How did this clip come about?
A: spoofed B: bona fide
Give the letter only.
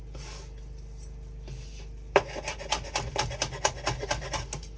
B